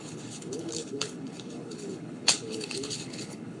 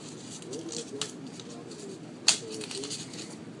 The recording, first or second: second